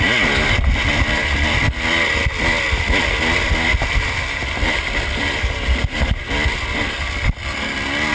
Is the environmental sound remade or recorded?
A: recorded